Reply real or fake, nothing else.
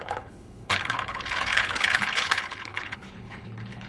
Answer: fake